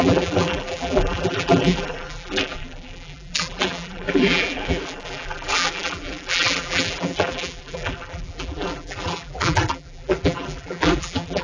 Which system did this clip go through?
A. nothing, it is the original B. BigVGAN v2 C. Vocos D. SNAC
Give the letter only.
B